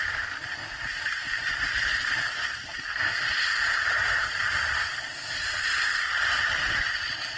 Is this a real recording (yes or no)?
yes